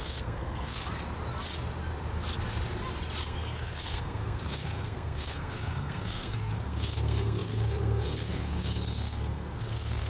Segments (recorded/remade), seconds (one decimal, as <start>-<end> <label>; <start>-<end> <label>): 0.0-0.8 remade; 0.8-3.2 recorded; 3.2-10.1 remade